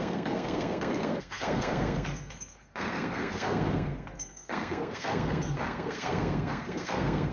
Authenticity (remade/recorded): remade